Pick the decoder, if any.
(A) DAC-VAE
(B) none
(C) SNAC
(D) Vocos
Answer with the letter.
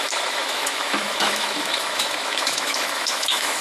A